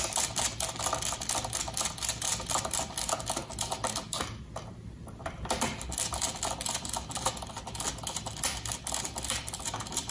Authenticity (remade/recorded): recorded